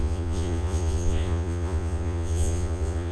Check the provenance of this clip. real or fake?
fake